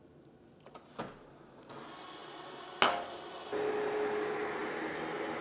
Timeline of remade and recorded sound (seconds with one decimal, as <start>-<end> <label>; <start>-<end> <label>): 0.0-5.4 recorded